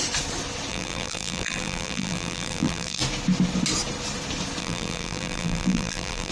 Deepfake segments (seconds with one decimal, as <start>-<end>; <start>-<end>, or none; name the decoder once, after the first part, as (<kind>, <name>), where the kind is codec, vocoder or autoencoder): 0.7-3.0 (vocoder, BigVGAN v2); 4.6-6.3